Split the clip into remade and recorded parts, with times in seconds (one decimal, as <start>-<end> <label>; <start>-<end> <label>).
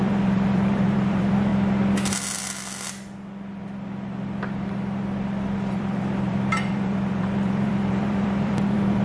0.0-1.5 remade; 1.5-5.7 recorded; 5.7-9.0 remade